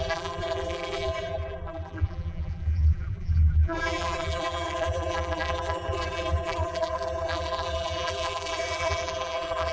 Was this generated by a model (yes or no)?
yes